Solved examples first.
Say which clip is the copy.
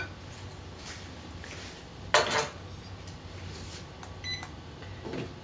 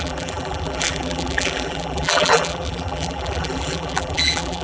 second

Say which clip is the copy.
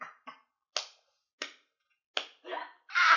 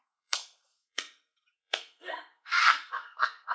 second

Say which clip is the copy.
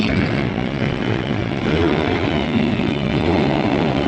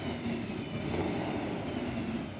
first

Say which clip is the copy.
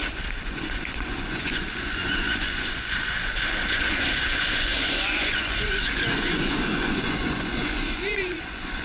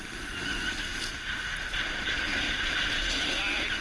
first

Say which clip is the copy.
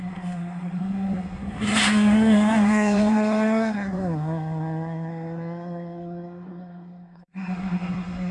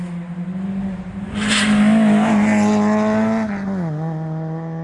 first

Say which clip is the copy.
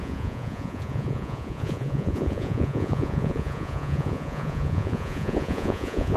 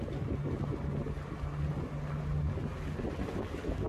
first